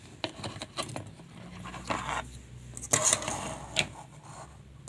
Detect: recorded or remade recorded